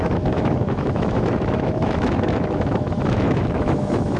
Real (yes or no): no